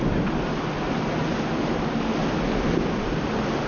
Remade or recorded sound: recorded